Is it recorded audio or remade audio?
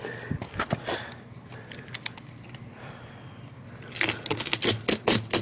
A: recorded